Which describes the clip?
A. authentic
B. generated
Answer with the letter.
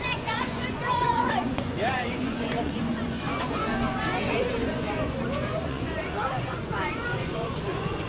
B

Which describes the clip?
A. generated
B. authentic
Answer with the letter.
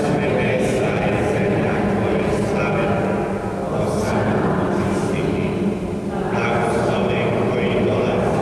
B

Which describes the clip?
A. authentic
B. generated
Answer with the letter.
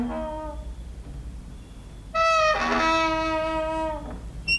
A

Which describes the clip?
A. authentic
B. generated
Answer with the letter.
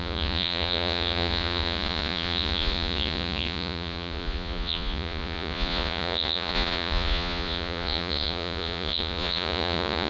B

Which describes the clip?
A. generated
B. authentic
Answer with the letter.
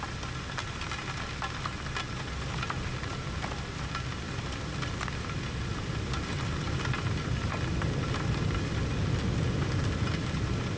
B